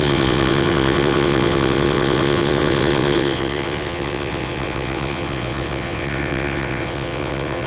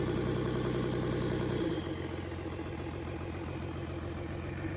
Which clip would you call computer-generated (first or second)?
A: first